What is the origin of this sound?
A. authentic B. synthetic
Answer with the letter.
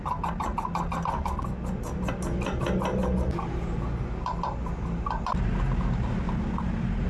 A